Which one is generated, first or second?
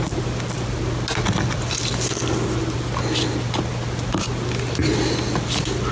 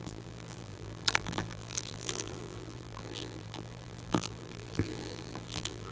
second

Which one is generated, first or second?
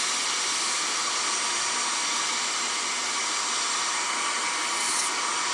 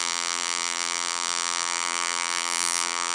second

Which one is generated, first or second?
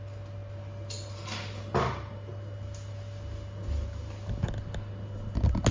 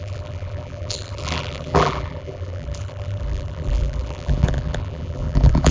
second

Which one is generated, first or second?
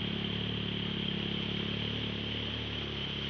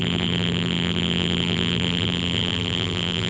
second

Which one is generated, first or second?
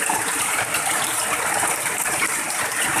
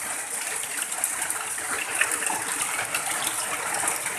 first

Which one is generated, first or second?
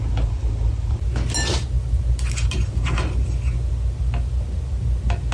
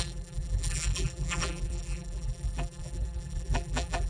second